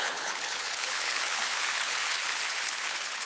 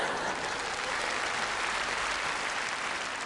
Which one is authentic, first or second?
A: second